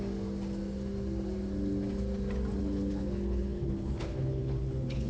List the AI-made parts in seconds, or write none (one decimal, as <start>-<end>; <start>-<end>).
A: 2.6-5.1